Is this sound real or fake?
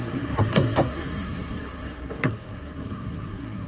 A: fake